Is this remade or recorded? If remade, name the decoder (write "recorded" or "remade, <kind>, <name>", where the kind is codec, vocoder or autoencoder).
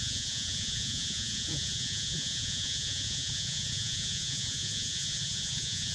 remade, vocoder, Vocos